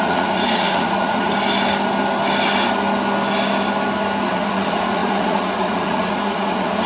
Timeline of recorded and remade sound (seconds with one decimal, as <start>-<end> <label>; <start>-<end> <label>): 0.0-1.3 remade; 1.3-4.3 recorded; 4.3-6.9 remade